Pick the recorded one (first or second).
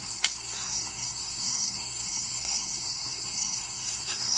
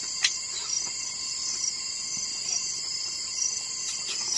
second